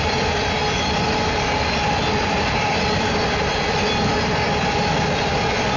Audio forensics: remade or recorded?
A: recorded